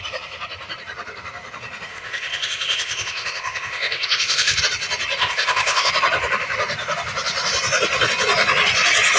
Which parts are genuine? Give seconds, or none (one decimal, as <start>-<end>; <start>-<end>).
0.0-1.9; 4.6-5.2; 5.9-9.2